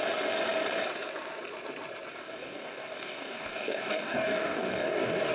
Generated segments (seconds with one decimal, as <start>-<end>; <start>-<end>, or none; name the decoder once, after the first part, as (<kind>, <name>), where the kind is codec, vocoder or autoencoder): 2.1-5.3 (codec, DAC)